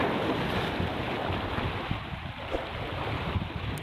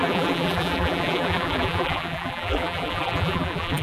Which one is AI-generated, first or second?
second